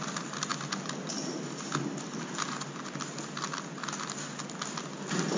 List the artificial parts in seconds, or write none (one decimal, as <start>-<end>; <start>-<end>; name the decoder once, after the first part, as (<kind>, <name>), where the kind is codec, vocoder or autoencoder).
none